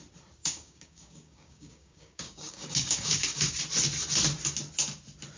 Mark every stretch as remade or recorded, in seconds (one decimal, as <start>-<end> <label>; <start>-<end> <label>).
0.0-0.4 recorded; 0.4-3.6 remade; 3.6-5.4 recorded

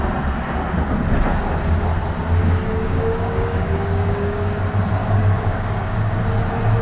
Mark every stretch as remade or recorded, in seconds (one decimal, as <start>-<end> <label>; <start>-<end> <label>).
0.0-2.4 recorded; 2.4-4.6 remade; 4.6-5.0 recorded; 5.0-6.1 remade; 6.1-6.8 recorded

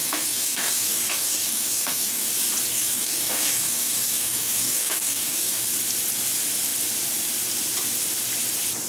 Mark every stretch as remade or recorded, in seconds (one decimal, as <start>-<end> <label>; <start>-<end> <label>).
0.0-2.3 remade; 2.3-2.7 recorded; 2.7-5.6 remade; 5.6-8.9 recorded

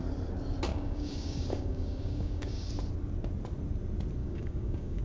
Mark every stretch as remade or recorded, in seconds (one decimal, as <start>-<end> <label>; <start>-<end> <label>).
0.0-0.7 recorded; 0.7-2.7 remade; 2.7-4.2 recorded; 4.2-5.0 remade

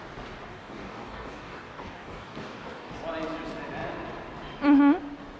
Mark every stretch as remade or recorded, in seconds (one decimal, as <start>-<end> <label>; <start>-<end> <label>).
0.0-0.5 recorded; 0.5-2.9 remade; 2.9-5.4 recorded